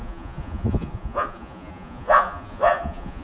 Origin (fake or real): fake